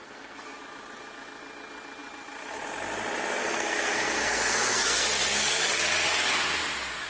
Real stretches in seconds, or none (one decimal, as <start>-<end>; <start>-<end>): 0.6-3.4; 5.6-7.1